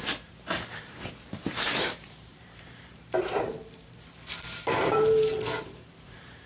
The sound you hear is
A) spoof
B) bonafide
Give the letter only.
A